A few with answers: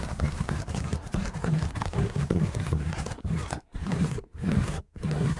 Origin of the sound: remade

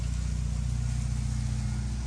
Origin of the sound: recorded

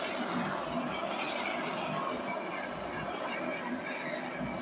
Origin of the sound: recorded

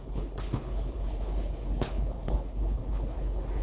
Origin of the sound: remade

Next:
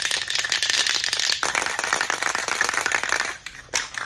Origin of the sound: recorded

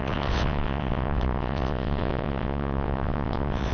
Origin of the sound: remade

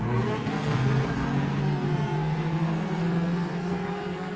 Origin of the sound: remade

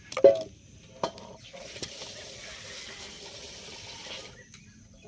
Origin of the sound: recorded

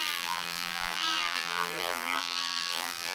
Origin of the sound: remade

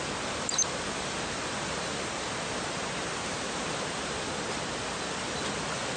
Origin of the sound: recorded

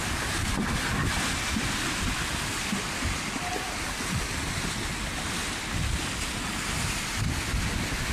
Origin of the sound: recorded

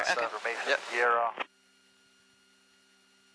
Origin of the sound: recorded